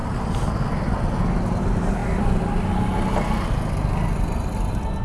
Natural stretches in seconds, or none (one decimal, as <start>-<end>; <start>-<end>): 0.0-5.0